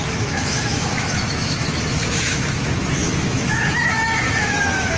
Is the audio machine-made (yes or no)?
yes